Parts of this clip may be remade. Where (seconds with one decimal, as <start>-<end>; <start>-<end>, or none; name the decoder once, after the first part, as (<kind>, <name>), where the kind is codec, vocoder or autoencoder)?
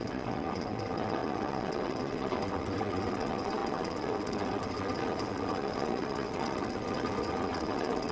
0.0-8.1 (vocoder, WaveNeXt)